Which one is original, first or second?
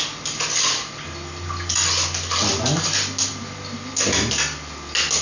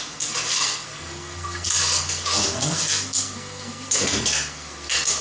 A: first